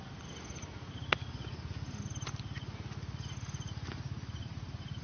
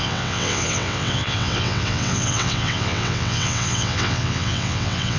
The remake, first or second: second